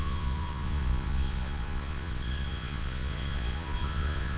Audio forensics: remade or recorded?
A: remade